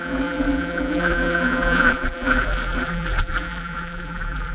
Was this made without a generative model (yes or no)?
no